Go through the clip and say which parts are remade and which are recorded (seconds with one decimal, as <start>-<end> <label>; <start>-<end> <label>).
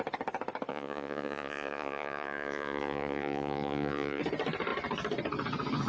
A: 0.0-0.7 recorded; 0.7-4.2 remade; 4.2-5.9 recorded